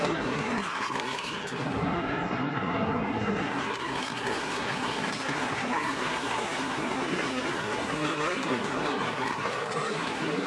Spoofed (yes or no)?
yes